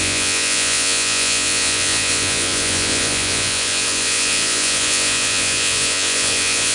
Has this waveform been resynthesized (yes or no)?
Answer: yes